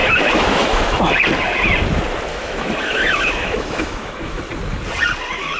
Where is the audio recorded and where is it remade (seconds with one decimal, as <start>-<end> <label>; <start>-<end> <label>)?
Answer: 0.0-1.0 remade; 1.0-2.3 recorded; 2.3-4.4 remade; 4.4-5.6 recorded